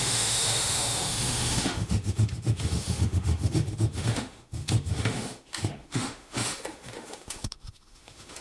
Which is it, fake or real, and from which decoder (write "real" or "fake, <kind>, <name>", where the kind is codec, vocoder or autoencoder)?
fake, autoencoder, DAC-VAE